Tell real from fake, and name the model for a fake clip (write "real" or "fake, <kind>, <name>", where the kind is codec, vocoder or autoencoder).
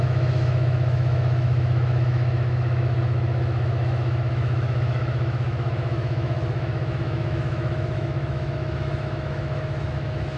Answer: fake, autoencoder, DAC-VAE